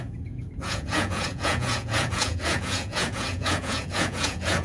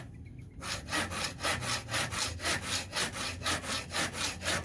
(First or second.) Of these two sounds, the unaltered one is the second